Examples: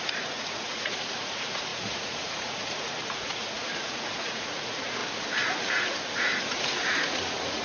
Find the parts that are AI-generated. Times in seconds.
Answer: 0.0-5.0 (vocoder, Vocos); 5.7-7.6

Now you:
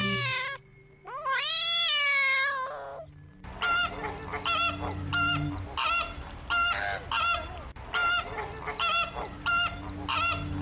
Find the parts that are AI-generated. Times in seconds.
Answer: none

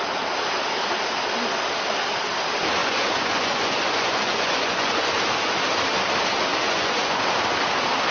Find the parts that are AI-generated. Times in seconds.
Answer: 2.8-5.1 (vocoder, Vocos); 6.5-7.2

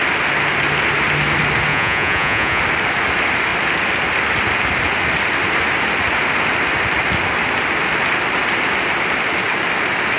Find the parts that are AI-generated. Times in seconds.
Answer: 1.7-2.6 (vocoder, Vocos)

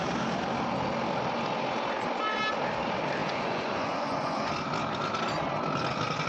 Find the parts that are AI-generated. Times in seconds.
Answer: 3.2-4.5 (vocoder, Vocos)

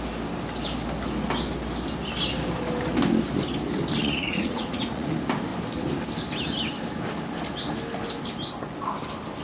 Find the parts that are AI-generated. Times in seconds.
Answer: 4.0-5.1 (vocoder, Vocos)

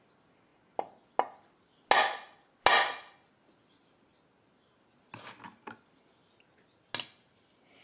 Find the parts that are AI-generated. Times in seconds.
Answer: none

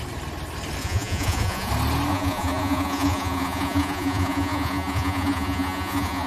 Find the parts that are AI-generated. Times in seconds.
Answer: 0.8-1.7 (vocoder, Vocos); 2.1-6.3